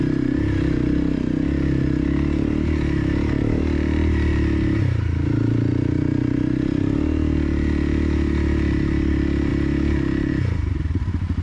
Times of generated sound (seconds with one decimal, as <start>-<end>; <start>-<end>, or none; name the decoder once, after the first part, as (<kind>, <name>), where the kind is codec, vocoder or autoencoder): none